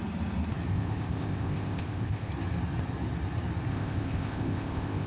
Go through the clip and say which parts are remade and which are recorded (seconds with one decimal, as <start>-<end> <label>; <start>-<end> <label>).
0.0-0.7 recorded; 0.7-2.3 remade; 2.3-3.7 recorded; 3.7-5.1 remade